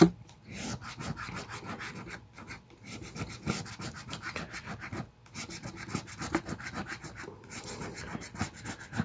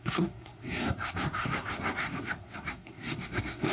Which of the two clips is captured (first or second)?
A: first